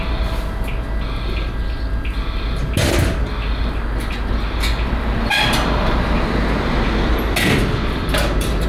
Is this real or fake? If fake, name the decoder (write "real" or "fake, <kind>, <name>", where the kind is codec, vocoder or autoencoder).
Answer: real